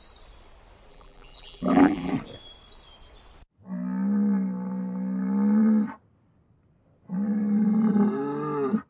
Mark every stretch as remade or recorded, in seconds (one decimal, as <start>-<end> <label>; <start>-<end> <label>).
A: 0.0-0.9 recorded; 0.9-2.1 remade; 2.1-8.9 recorded